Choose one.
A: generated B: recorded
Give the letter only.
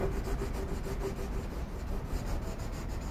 B